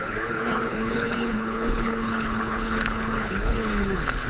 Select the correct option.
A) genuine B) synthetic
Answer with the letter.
B